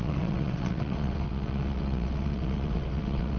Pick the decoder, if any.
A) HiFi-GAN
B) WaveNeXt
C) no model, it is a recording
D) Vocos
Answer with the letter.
B